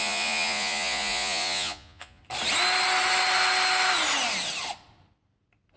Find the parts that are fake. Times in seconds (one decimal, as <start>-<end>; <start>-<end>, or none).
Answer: 0.0-2.2